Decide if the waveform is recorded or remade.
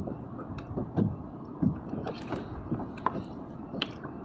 recorded